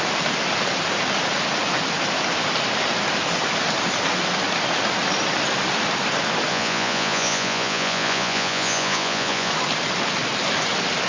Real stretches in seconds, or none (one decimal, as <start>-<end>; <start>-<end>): 0.0-6.5; 9.5-11.1